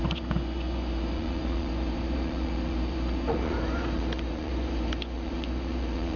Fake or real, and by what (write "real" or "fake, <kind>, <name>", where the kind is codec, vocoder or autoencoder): fake, vocoder, Vocos